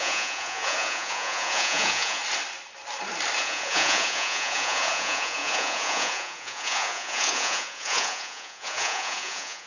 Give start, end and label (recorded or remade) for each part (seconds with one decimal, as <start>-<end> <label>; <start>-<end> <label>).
0.0-2.2 remade; 2.2-3.4 recorded; 3.4-9.7 remade